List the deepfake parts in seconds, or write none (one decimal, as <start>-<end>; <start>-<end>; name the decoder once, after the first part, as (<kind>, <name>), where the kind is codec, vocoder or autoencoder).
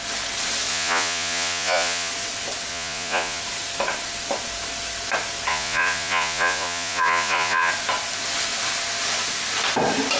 0.7-2.1 (vocoder, Vocos); 2.7-3.4; 5.5-7.7